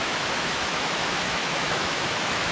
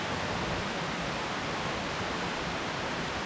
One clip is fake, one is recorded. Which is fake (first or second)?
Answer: first